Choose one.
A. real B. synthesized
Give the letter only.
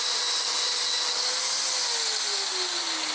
A